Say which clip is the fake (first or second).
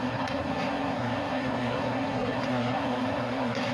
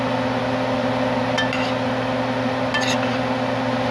first